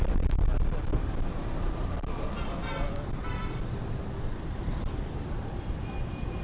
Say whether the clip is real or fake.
real